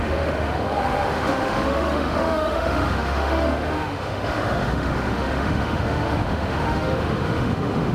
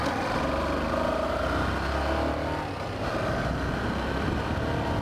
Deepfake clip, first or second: first